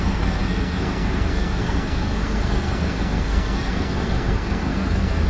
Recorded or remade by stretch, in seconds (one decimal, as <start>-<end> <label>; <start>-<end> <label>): 0.0-5.3 remade